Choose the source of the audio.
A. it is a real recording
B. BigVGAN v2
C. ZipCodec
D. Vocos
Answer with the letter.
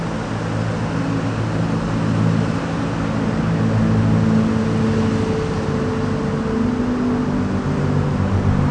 A